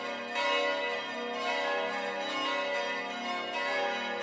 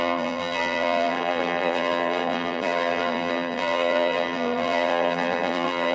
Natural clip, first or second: first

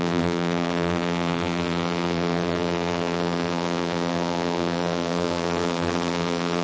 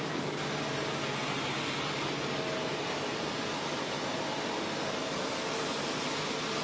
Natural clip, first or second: second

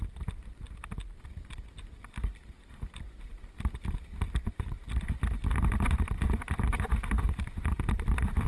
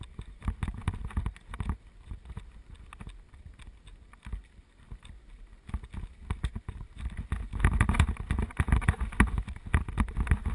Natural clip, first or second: second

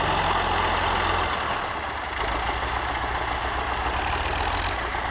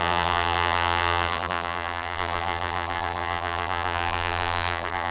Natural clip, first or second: first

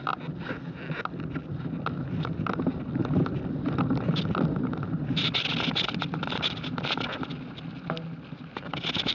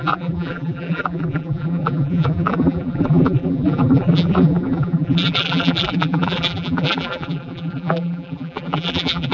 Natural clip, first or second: first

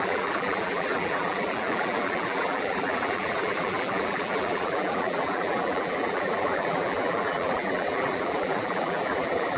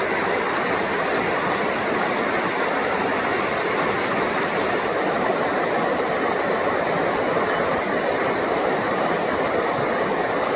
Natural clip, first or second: second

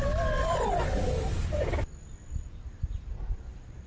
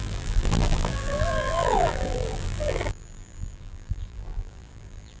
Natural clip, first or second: first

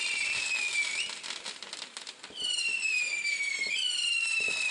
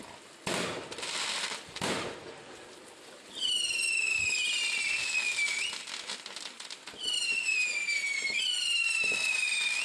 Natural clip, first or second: second